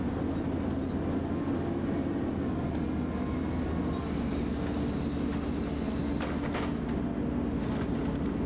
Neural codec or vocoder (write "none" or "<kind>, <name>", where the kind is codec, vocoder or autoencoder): none